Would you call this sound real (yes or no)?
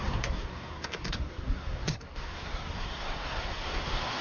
no